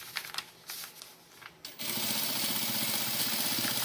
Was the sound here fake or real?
real